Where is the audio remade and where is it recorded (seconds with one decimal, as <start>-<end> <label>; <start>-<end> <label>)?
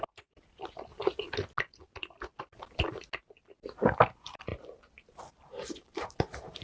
0.0-0.9 remade; 0.9-4.0 recorded; 4.0-4.5 remade; 4.5-5.5 recorded; 5.5-6.6 remade